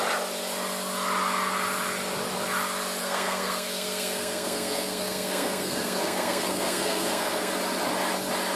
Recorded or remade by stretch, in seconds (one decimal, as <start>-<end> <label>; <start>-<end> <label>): 0.0-3.0 recorded; 3.0-7.5 remade; 7.5-8.6 recorded